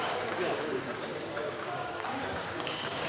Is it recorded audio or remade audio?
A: remade